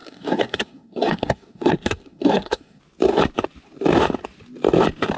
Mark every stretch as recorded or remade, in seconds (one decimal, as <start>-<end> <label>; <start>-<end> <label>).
0.0-2.8 remade; 2.8-5.2 recorded